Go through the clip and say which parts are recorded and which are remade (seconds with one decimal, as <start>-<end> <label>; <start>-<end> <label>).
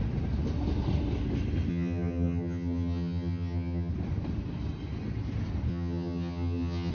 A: 0.0-1.7 recorded; 1.7-3.9 remade; 3.9-5.7 recorded; 5.7-6.9 remade